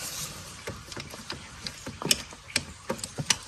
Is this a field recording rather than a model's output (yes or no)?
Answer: yes